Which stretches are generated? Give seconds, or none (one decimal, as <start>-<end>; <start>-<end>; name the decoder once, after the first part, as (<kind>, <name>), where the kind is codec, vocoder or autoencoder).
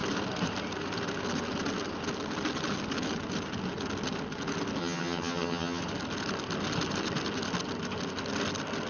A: 4.8-5.8 (vocoder, HiFi-GAN)